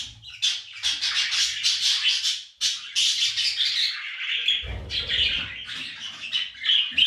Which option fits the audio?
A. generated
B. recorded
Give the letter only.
B